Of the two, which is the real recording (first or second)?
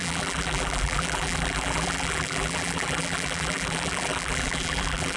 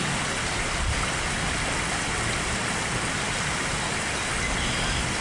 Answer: second